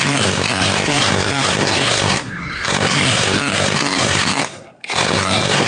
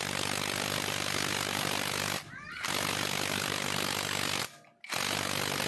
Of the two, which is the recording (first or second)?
second